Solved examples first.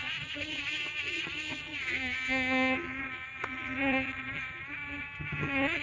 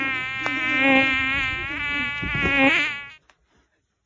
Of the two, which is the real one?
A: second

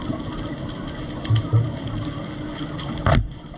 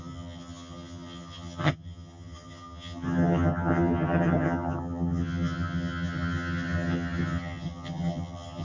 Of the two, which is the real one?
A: first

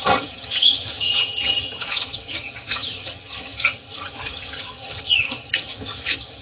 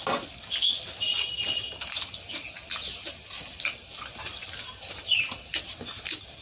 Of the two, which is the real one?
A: second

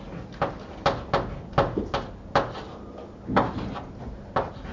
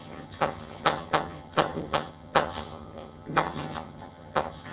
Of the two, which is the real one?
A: first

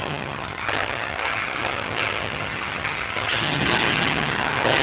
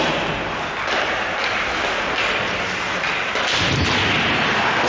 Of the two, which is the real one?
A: second